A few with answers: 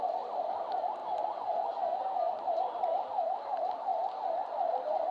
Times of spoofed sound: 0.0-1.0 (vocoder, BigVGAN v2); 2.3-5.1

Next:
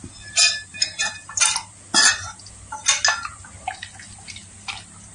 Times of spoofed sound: none

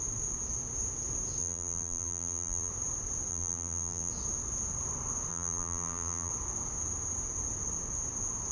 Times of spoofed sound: 1.4-2.7 (vocoder, BigVGAN v2); 3.3-4.1; 5.3-6.3

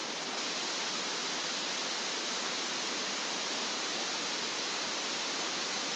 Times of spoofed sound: 0.0-6.0 (vocoder, BigVGAN v2)